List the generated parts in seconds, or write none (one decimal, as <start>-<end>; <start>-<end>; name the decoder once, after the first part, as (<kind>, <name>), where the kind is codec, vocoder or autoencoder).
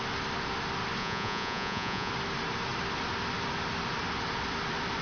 1.0-2.1 (vocoder, Vocos)